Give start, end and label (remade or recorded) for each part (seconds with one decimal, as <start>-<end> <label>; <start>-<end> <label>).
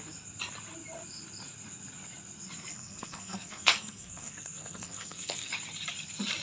0.0-2.7 recorded; 2.7-5.5 remade; 5.5-6.4 recorded